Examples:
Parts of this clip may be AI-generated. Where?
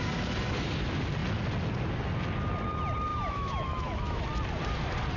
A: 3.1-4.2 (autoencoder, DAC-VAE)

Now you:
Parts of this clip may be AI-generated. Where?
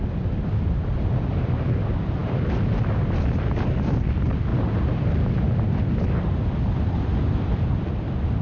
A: none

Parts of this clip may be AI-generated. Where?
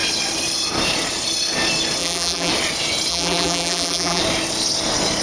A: 2.0-2.5 (vocoder, BigVGAN v2); 3.1-4.2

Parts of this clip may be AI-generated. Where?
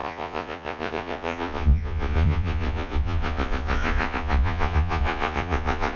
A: 0.0-6.0 (vocoder, Vocos)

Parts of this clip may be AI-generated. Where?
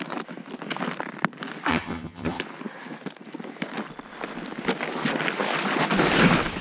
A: 1.7-2.4 (vocoder, HiFi-GAN)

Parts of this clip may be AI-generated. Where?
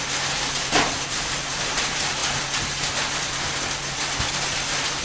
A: none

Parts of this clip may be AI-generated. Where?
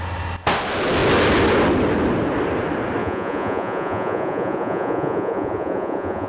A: 3.0-6.3 (vocoder, Vocos)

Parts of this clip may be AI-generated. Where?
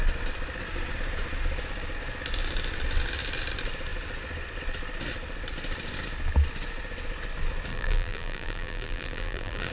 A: 7.7-9.7 (vocoder, BigVGAN v2)